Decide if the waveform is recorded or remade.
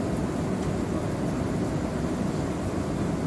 recorded